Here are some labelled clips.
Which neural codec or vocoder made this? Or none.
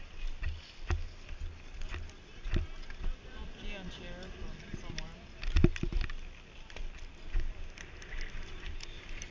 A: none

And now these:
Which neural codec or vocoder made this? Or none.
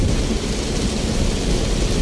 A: none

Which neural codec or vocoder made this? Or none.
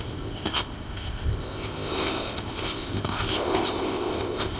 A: codec, ZipCodec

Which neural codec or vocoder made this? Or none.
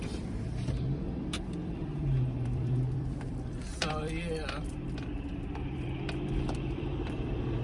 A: vocoder, BigVGAN v2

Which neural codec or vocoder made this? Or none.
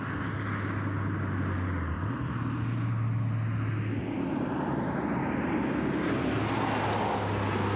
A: none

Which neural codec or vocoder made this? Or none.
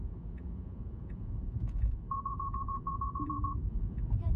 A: vocoder, Vocos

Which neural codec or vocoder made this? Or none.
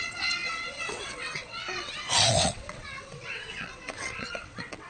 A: vocoder, WaveNeXt